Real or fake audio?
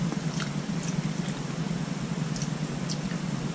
real